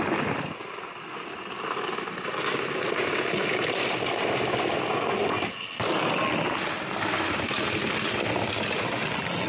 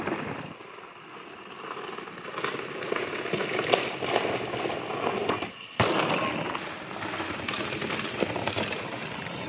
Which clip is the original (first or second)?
first